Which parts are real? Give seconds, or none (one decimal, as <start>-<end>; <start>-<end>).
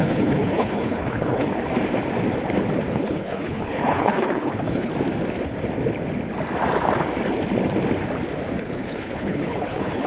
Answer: 1.6-2.9; 4.9-8.6